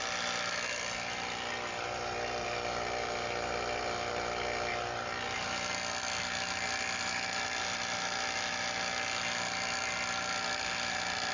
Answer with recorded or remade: recorded